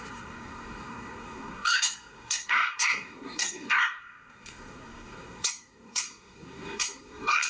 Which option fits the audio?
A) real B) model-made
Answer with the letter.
B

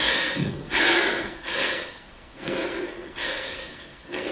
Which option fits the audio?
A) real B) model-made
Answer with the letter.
B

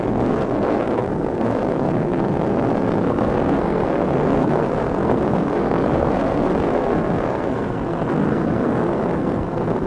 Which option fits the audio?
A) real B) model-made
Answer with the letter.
B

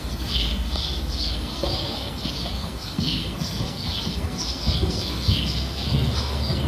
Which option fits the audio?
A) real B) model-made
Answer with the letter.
B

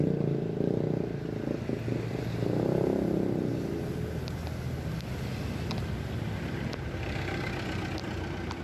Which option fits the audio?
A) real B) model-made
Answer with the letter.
A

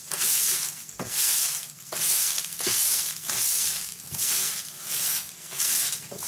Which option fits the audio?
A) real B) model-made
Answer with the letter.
B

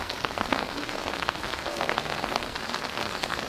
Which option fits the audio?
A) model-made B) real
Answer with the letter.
A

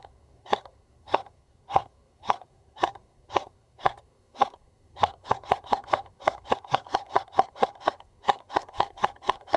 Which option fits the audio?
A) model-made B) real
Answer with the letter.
A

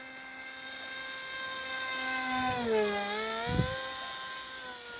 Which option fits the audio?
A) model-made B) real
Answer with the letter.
B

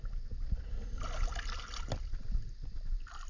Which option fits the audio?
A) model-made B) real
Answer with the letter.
B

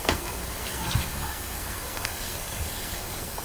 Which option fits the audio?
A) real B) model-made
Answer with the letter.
B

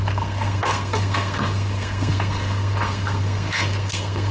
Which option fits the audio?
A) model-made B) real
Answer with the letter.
A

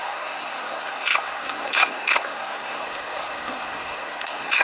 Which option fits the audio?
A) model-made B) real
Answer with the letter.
A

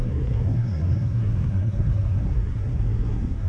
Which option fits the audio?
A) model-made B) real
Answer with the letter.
A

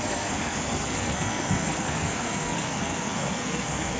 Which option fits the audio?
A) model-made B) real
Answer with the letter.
A